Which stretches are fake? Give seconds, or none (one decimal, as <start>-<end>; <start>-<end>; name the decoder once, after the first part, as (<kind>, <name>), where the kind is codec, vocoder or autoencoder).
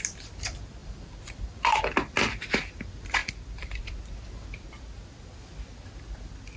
0.8-1.8 (vocoder, BigVGAN v2); 3.2-3.8